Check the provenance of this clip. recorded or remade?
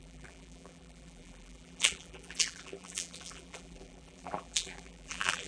remade